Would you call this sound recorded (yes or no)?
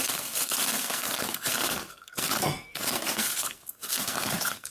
no